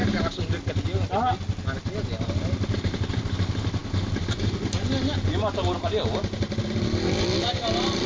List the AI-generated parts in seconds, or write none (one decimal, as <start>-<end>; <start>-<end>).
none